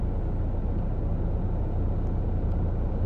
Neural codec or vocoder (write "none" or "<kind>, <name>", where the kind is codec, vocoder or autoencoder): none